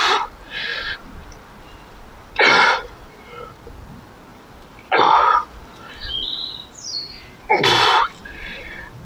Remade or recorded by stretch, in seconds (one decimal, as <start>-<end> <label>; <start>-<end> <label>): 0.0-0.7 recorded; 0.7-3.2 remade; 3.2-4.3 recorded; 4.3-9.0 remade